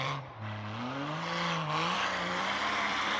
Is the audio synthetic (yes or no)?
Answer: yes